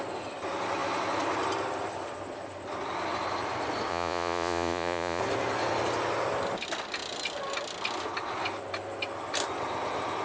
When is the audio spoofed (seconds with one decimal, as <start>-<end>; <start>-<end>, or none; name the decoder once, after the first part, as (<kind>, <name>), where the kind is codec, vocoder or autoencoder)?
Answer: 3.9-5.2 (vocoder, Vocos)